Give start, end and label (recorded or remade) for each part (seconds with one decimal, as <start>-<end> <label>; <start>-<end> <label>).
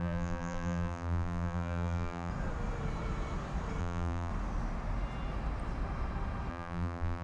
0.0-2.3 remade; 2.3-3.8 recorded; 3.8-4.3 remade; 4.3-6.5 recorded; 6.5-7.2 remade